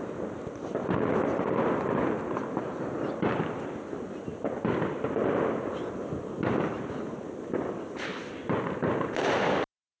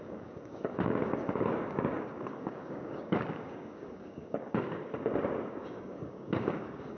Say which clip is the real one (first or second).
first